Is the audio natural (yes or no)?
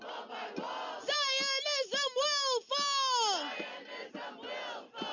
yes